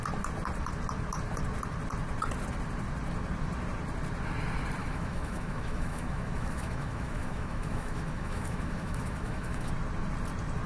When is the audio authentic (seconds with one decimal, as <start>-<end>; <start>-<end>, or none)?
0.0-4.8; 9.7-10.7